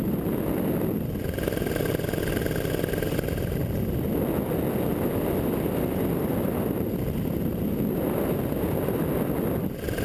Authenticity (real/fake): real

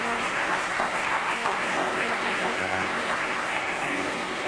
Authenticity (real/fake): fake